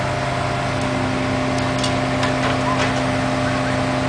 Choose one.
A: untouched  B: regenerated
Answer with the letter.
A